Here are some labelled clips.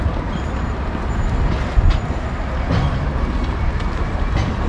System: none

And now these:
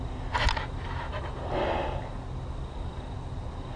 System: none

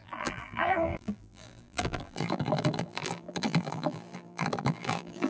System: vocoder, BigVGAN v2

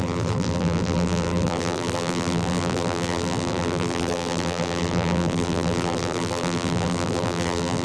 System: vocoder, BigVGAN v2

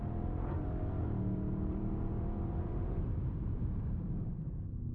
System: vocoder, BigVGAN v2